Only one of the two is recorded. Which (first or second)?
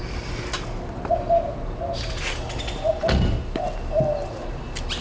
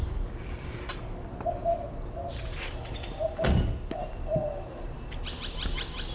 first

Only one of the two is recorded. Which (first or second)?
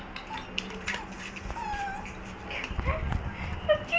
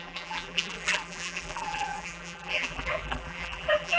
first